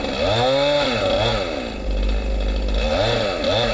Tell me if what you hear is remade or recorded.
recorded